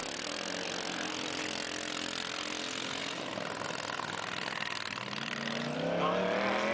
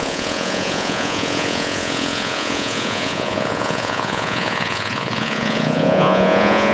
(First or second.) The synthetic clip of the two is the second